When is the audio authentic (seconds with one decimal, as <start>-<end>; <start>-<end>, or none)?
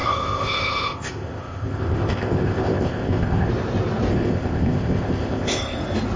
3.5-4.1; 5.8-6.2